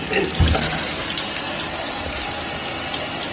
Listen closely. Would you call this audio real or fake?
real